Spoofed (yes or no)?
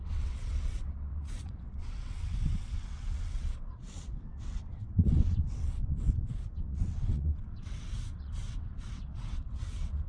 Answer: yes